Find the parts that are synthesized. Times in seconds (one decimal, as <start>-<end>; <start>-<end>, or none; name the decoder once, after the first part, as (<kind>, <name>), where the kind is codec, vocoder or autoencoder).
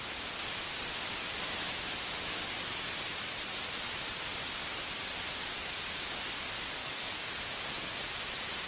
6.8-7.3 (codec, DAC)